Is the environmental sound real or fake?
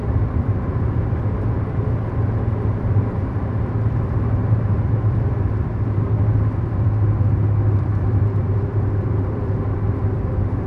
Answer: fake